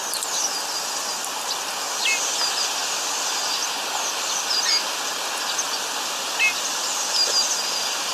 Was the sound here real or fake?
real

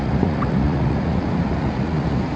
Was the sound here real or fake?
fake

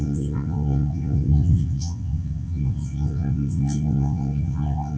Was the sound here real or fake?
fake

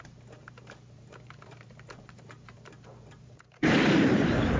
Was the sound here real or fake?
fake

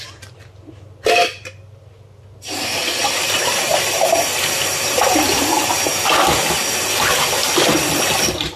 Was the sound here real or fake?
real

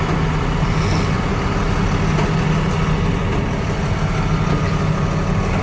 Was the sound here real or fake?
real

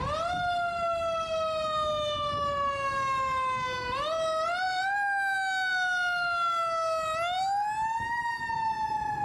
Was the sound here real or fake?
real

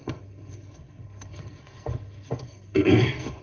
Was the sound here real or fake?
fake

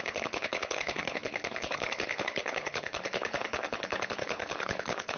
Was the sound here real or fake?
fake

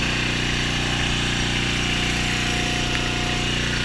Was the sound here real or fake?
real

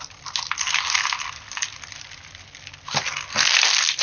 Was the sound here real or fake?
real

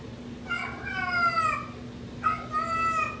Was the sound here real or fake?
real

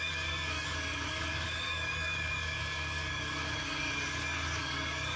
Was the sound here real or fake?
fake